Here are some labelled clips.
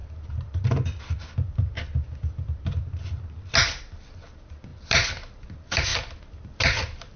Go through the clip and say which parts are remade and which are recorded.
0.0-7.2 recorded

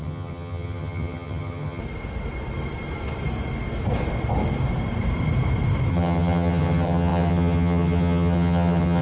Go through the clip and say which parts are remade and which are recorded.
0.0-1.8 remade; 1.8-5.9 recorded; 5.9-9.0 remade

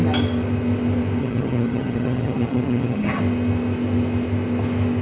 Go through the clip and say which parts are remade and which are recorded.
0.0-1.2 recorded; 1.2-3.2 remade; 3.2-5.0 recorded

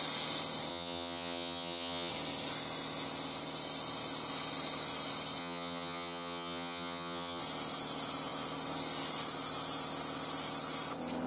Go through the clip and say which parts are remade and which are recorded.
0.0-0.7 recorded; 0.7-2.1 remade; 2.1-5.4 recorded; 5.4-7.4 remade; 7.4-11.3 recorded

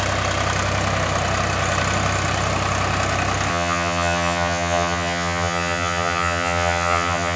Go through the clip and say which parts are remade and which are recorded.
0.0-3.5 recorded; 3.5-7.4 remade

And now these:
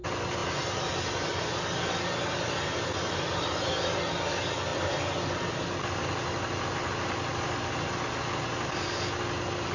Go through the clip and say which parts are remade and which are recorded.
0.0-9.7 recorded

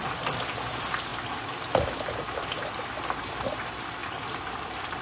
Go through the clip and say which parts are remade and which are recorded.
0.0-5.0 recorded